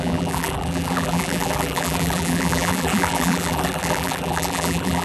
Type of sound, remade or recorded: remade